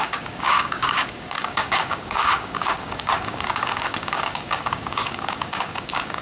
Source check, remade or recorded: remade